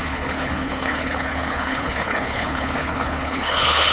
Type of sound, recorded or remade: remade